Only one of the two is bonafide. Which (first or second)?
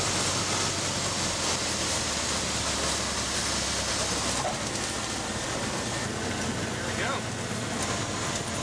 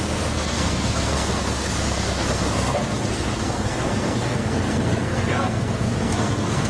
first